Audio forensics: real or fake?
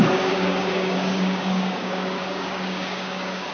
fake